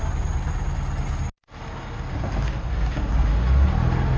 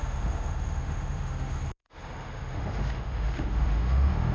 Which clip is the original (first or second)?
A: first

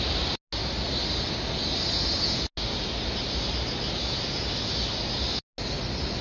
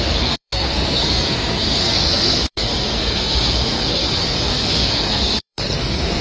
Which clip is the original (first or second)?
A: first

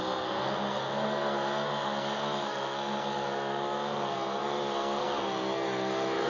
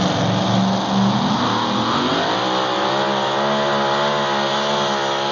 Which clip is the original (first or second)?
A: second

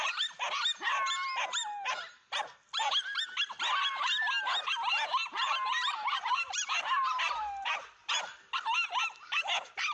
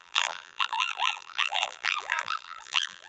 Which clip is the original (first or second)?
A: first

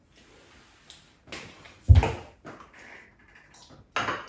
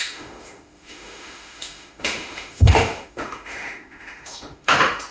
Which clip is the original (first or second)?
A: first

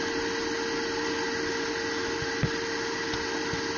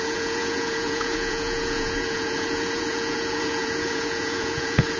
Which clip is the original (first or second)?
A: first